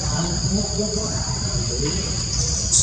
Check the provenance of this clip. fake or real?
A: fake